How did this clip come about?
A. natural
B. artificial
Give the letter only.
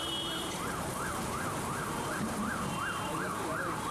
B